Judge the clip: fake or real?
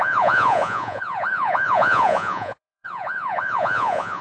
fake